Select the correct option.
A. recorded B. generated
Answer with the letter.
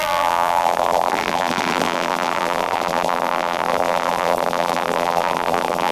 B